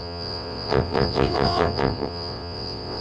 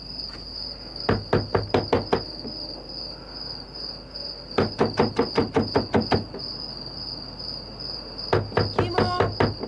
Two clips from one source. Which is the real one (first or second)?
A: second